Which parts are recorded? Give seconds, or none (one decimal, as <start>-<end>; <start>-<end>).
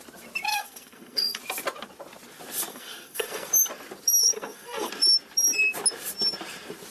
0.0-0.5; 1.4-2.7; 3.5-4.2; 4.9-6.9